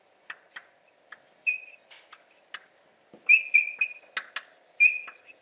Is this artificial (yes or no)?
no